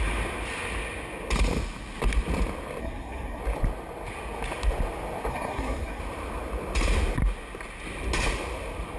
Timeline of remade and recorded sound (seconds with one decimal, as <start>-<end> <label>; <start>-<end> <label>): 0.0-2.8 recorded; 2.8-3.4 remade; 3.4-5.3 recorded; 5.3-6.0 remade; 6.0-9.0 recorded